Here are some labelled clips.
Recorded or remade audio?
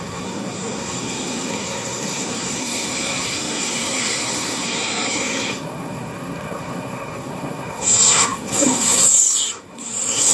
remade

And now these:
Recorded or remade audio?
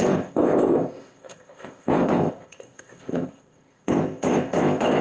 remade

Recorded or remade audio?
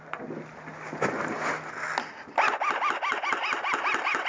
recorded